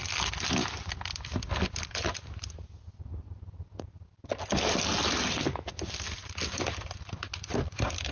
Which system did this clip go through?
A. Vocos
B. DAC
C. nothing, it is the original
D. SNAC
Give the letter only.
C